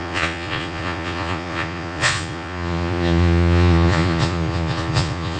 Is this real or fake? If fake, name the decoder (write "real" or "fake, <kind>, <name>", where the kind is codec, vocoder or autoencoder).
fake, vocoder, Vocos